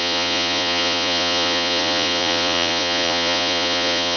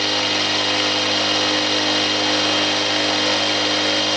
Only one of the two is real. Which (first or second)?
second